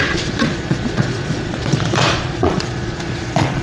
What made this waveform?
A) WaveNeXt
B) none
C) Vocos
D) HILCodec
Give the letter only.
C